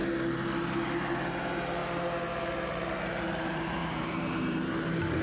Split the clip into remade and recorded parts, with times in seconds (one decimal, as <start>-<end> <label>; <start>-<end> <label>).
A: 0.0-1.3 recorded; 1.3-5.2 remade

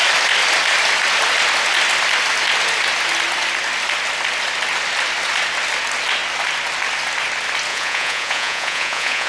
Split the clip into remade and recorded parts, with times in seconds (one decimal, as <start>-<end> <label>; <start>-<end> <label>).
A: 0.0-7.7 recorded; 7.7-9.3 remade

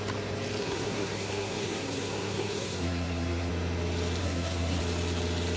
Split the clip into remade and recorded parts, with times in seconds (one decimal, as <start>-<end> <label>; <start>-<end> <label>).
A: 0.0-0.6 recorded; 0.6-3.5 remade; 3.5-4.2 recorded; 4.2-4.8 remade; 4.8-5.6 recorded

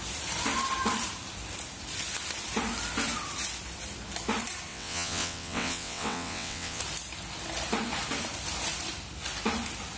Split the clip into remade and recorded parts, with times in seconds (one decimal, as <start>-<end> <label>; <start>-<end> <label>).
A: 0.0-4.7 recorded; 4.7-6.8 remade; 6.8-10.0 recorded